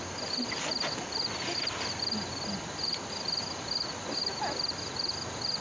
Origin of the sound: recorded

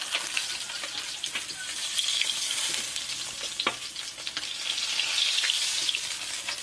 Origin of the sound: recorded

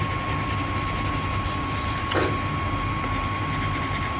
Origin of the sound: recorded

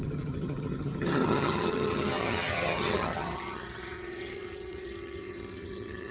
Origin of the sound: remade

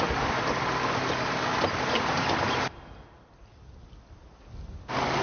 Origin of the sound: recorded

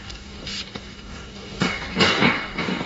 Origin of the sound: remade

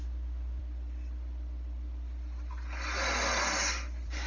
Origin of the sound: recorded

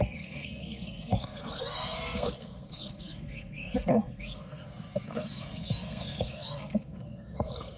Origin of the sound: remade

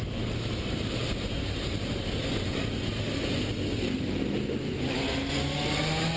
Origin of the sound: recorded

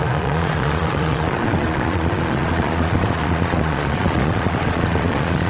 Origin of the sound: remade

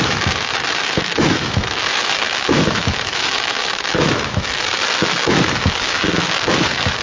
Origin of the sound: remade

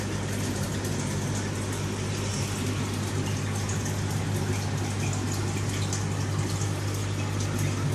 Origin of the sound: recorded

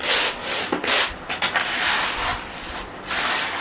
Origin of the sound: recorded